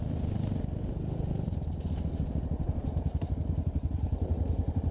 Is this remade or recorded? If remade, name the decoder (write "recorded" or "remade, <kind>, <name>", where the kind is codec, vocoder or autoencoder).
recorded